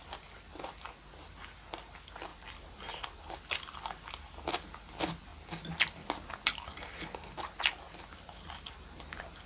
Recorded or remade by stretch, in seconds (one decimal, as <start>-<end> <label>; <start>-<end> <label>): 0.0-9.5 recorded